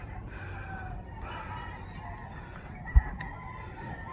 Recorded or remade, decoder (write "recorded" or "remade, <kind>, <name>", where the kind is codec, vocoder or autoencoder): recorded